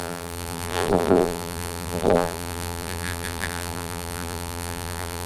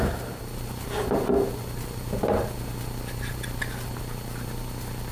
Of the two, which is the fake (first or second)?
first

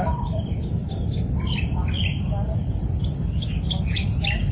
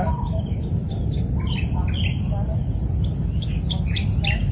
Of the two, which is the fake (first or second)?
first